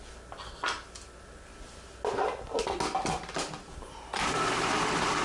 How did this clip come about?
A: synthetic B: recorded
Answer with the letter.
B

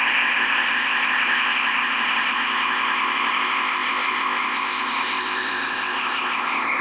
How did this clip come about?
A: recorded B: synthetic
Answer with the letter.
B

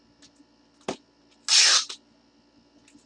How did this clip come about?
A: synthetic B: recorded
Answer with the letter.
B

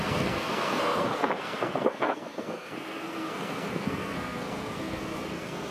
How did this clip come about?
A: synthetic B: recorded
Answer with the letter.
A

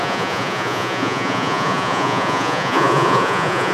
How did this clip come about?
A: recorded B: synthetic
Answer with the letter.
B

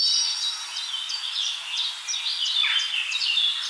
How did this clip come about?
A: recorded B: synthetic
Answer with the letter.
A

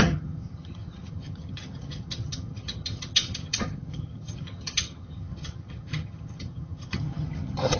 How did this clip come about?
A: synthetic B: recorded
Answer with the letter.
A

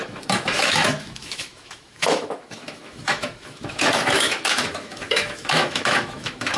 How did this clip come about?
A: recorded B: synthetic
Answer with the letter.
B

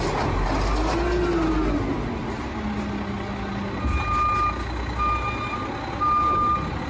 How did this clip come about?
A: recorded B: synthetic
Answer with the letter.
A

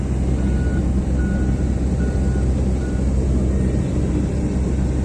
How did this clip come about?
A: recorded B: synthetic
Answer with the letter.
A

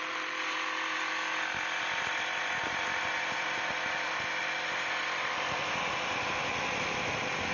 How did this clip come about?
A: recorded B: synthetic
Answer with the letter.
B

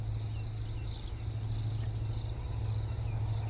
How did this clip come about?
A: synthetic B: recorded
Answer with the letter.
B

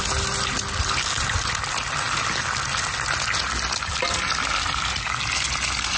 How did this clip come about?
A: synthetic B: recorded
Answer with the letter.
B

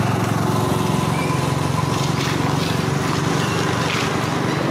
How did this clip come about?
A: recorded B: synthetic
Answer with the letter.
A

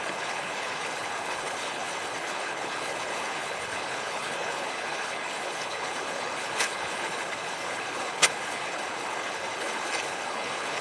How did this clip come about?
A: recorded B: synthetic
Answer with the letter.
B